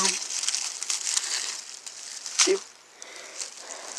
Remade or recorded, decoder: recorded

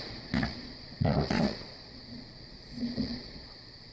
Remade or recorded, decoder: remade, vocoder, Vocos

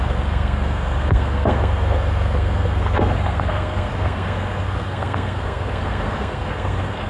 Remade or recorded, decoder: remade, codec, SNAC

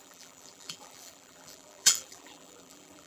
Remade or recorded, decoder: remade, vocoder, BigVGAN v2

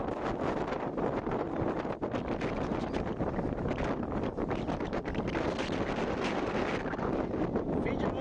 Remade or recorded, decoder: recorded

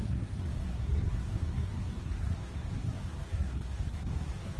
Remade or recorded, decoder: remade, codec, SNAC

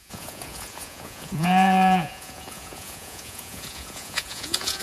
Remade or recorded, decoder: remade, vocoder, Vocos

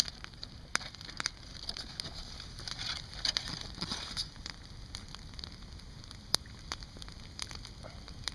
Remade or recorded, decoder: recorded